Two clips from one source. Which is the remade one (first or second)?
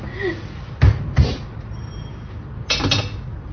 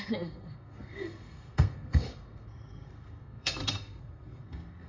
second